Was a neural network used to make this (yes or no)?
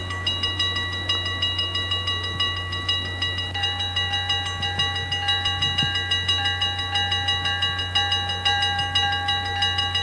no